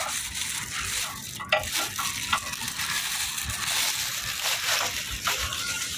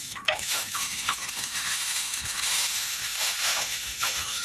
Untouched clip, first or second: first